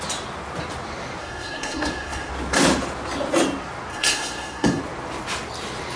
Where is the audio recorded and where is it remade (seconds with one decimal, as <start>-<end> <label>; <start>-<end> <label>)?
0.0-1.2 recorded; 1.2-2.3 remade; 2.3-3.9 recorded; 3.9-4.8 remade; 4.8-6.0 recorded